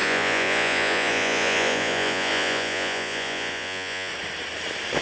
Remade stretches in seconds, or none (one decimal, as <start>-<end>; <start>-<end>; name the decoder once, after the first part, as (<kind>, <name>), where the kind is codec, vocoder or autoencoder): 0.0-4.1 (vocoder, Vocos)